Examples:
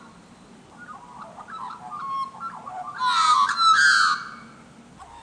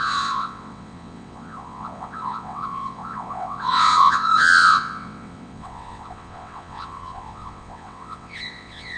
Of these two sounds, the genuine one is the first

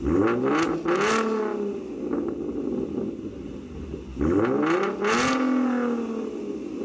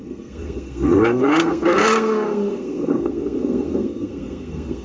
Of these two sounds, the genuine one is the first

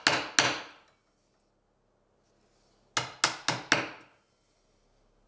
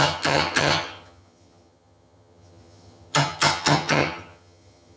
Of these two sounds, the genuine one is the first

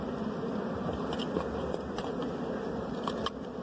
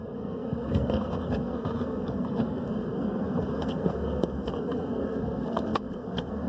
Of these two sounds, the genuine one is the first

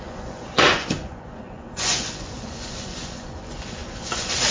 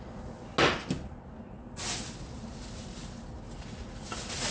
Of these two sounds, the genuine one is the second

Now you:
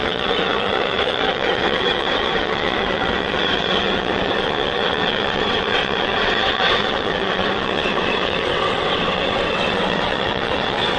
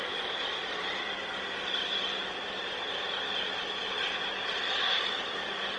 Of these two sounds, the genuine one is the second